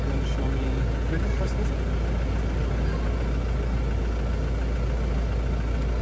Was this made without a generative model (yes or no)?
yes